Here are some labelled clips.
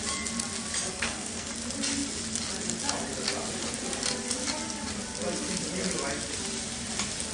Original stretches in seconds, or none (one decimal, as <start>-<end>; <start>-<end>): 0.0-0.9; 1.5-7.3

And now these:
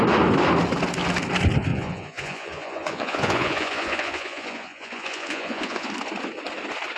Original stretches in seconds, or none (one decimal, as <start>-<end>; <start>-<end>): 0.0-1.7; 5.9-7.0

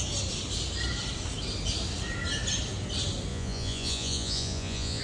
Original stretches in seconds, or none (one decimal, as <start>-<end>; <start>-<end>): 0.0-3.3